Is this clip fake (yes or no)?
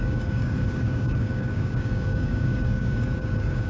yes